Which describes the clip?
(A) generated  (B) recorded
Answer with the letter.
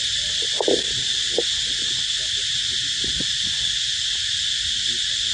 B